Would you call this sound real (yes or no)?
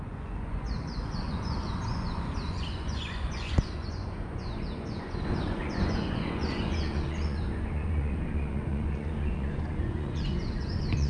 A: no